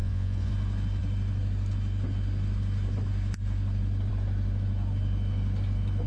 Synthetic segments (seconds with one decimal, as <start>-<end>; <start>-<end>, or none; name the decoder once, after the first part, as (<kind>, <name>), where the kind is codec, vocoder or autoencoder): 0.0-0.5 (vocoder, Vocos)